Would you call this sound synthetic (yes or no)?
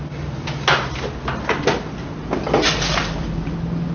no